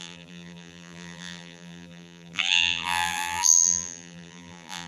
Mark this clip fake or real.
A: fake